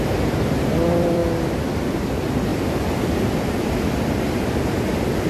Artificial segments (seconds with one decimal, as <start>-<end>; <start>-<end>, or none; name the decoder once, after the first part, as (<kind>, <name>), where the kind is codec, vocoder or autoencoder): 0.0-1.2 (vocoder, BigVGAN v2); 1.8-5.3